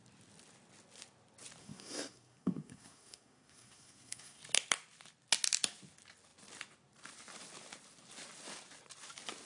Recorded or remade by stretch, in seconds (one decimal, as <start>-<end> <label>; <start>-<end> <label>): 0.0-1.6 recorded; 1.6-4.4 remade; 4.4-9.5 recorded